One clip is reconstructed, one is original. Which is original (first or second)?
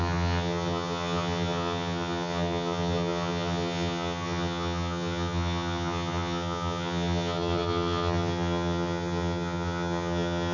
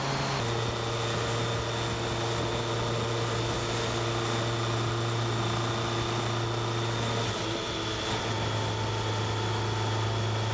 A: second